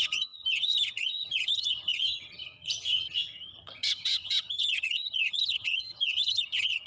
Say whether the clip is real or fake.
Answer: fake